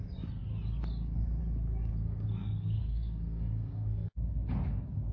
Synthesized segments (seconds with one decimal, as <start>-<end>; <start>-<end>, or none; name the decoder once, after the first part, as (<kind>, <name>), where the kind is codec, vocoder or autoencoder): 1.9-4.1 (codec, SNAC)